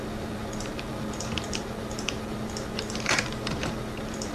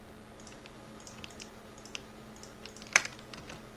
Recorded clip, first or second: second